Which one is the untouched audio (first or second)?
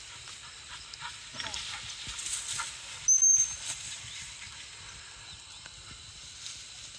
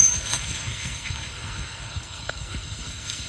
first